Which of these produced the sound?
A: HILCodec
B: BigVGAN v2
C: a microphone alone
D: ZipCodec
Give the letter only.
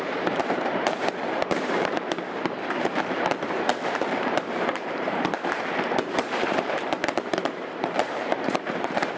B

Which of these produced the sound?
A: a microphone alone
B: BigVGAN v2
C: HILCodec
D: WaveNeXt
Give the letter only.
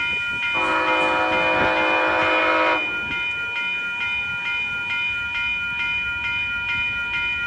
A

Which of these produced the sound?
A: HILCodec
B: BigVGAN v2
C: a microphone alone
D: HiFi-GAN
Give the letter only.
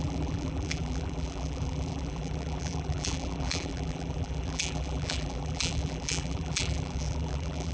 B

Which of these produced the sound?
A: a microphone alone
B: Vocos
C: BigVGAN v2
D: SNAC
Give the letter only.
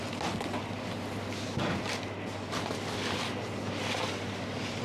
A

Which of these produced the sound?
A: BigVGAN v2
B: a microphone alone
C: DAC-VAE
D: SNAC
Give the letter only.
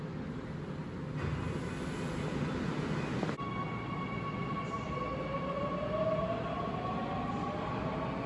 B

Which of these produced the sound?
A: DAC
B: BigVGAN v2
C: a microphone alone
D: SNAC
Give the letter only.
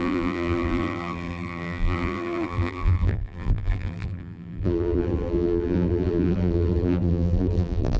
B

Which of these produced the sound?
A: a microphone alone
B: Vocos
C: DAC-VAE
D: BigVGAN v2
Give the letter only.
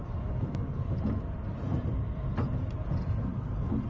D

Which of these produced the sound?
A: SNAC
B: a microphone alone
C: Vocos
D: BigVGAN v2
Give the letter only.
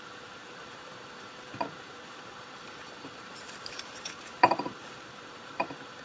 D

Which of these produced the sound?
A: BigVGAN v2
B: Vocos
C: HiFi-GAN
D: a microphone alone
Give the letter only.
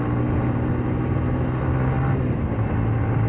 D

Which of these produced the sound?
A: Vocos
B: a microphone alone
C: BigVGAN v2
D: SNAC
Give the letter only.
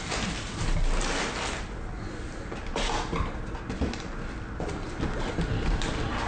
B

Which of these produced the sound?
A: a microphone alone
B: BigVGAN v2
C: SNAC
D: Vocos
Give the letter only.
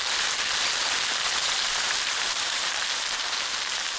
B